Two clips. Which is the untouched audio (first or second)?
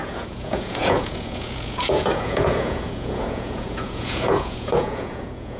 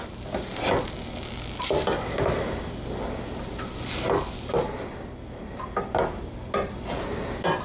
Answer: second